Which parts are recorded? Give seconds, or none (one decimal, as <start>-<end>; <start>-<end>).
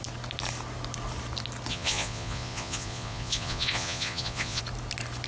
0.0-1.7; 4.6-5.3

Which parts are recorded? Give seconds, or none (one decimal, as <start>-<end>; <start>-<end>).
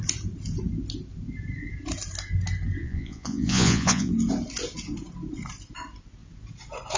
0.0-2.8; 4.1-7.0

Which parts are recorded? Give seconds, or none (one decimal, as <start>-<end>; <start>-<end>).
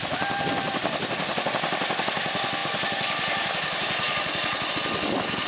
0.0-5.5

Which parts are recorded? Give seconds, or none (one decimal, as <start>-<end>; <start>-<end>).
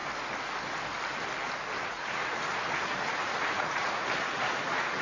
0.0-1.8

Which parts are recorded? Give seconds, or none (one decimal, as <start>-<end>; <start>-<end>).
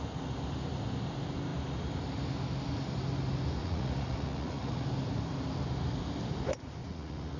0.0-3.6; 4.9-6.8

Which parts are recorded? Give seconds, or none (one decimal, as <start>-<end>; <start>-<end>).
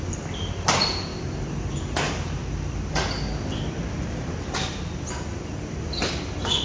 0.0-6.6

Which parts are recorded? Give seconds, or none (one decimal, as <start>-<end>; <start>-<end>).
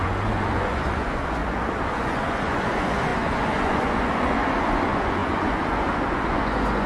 1.4-1.9